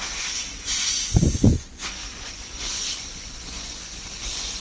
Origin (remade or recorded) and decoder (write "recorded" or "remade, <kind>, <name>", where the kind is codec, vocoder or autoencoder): remade, vocoder, Vocos